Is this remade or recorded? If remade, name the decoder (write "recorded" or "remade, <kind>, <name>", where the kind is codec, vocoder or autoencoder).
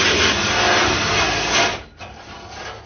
recorded